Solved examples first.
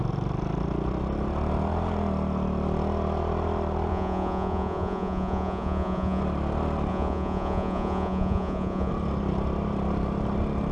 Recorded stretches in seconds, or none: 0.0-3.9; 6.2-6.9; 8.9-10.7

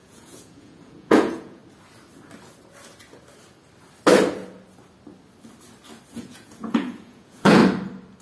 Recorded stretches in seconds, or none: 1.6-6.1; 7.6-8.2

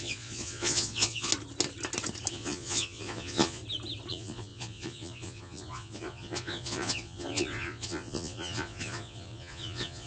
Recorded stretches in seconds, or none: 1.3-2.3; 3.6-4.1

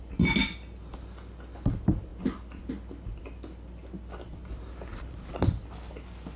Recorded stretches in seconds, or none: 0.0-6.4

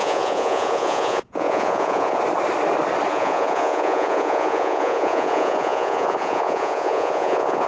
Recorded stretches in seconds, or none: 2.2-3.1

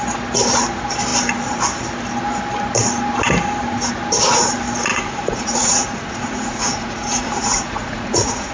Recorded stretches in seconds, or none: 0.0-4.9

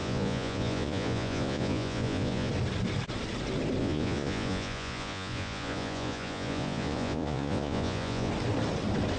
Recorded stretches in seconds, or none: 2.5-3.8; 8.3-9.2

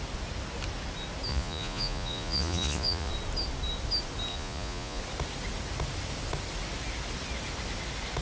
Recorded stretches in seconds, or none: 0.0-1.3; 3.1-4.3; 5.0-8.2